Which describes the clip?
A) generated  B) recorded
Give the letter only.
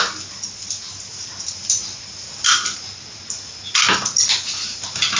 B